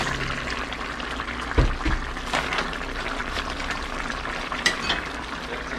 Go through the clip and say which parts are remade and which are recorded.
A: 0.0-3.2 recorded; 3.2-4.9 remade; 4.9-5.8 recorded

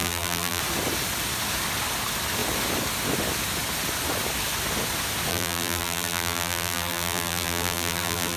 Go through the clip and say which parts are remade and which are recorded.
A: 0.0-0.6 remade; 0.6-5.3 recorded; 5.3-8.4 remade

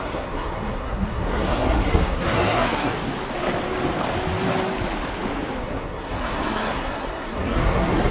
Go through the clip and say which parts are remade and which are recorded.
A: 0.0-2.9 remade; 2.9-5.6 recorded; 5.6-8.1 remade

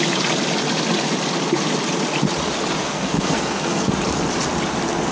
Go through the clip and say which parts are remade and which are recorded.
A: 0.0-2.8 recorded; 2.8-3.9 remade; 3.9-5.1 recorded

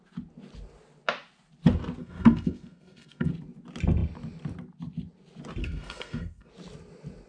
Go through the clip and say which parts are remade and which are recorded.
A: 0.0-2.0 recorded; 2.0-3.3 remade; 3.3-5.6 recorded; 5.6-6.5 remade; 6.5-7.3 recorded

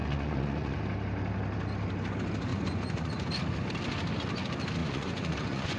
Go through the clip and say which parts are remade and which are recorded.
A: 0.0-0.8 remade; 0.8-2.5 recorded; 2.5-3.3 remade; 3.3-4.8 recorded; 4.8-5.8 remade